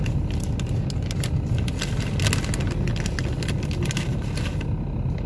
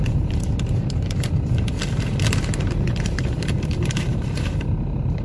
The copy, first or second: second